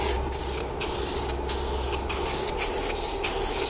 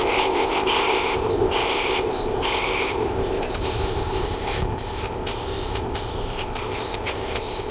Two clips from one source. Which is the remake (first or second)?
second